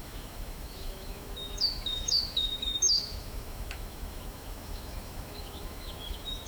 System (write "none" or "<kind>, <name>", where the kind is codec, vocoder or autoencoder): autoencoder, DAC-VAE